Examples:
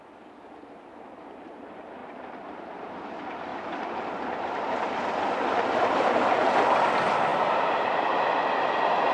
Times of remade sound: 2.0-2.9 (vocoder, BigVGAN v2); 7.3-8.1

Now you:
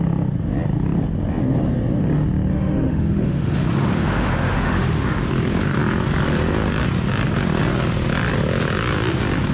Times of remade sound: 2.5-5.3 (autoencoder, DAC-VAE)

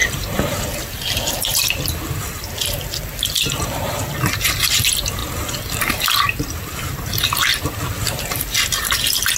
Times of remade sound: 0.0-4.7 (vocoder, BigVGAN v2); 7.5-8.3

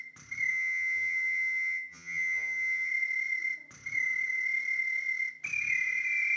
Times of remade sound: 0.5-2.9 (vocoder, HiFi-GAN)

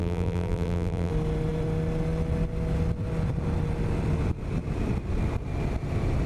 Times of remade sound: 0.0-1.1 (vocoder, BigVGAN v2)

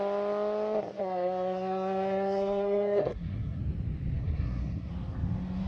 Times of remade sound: 1.0-3.6 (codec, SNAC); 4.2-4.9

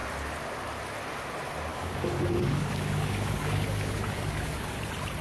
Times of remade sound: 1.7-4.8 (codec, DAC)

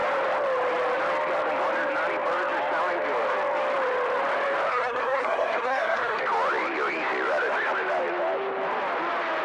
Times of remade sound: 4.7-6.2 (codec, SNAC)